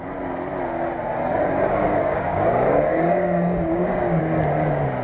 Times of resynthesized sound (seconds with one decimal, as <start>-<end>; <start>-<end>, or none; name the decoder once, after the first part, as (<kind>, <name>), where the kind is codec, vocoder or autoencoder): 1.2-4.2 (codec, DAC)